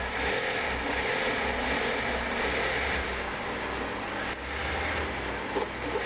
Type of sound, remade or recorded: recorded